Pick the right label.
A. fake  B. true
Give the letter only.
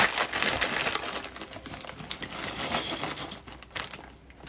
B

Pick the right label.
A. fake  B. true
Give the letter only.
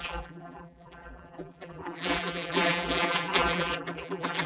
A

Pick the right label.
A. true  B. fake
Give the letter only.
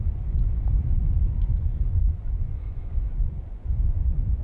B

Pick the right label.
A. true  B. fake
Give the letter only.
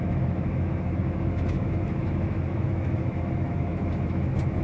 B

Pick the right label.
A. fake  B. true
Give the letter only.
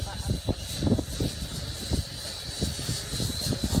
B